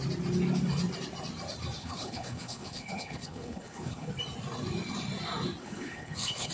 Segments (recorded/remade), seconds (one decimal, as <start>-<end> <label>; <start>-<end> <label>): 0.0-1.8 recorded; 1.8-4.1 remade; 4.1-5.6 recorded; 5.6-6.5 remade